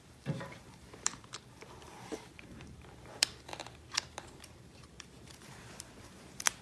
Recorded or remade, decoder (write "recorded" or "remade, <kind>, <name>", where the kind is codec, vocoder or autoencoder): remade, vocoder, BigVGAN v2